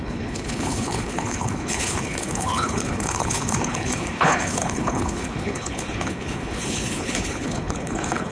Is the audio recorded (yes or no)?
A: no